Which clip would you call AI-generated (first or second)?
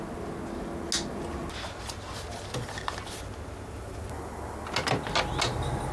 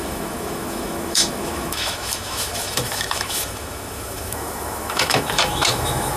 second